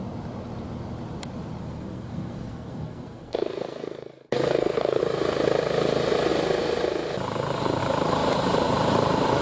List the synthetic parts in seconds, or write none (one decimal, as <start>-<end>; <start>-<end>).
1.6-5.0

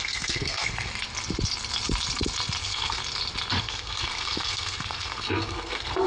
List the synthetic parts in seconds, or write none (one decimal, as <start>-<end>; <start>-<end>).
0.0-0.9; 2.6-3.0; 3.6-6.1

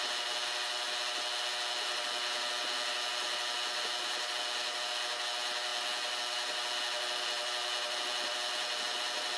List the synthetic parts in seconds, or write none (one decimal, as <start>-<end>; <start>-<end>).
none

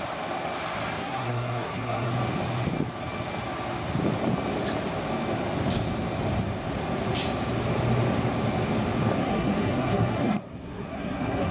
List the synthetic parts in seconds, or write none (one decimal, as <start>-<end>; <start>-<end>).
1.0-2.1; 9.2-11.5